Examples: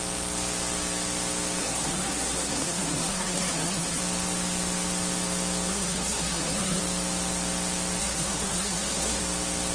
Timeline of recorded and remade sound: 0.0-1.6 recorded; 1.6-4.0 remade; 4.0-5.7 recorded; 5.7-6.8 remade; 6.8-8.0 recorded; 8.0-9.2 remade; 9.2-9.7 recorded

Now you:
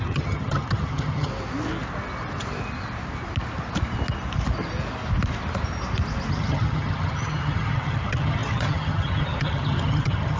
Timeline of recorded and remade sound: 0.0-1.3 remade; 1.3-6.3 recorded; 6.3-10.4 remade

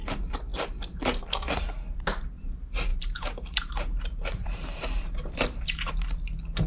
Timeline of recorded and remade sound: 0.0-2.9 recorded; 2.9-5.9 remade; 5.9-6.7 recorded

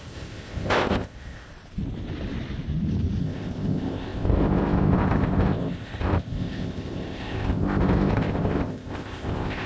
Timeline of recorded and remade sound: 0.0-1.5 remade; 1.5-3.2 recorded; 3.2-9.7 remade

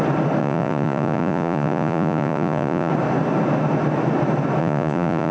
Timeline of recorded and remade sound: 0.0-0.4 recorded; 0.4-2.9 remade; 2.9-4.6 recorded; 4.6-5.3 remade

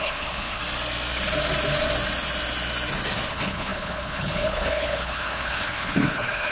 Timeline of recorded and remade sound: 0.0-0.6 remade; 0.6-3.3 recorded; 3.3-6.5 remade

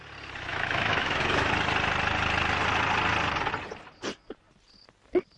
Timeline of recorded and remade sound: 0.0-0.5 recorded; 0.5-1.5 remade; 1.5-5.4 recorded